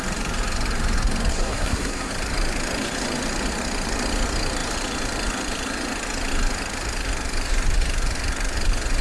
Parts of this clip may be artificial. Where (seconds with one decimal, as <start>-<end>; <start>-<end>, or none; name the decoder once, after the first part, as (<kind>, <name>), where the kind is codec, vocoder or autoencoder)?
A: 1.3-2.1 (codec, SNAC)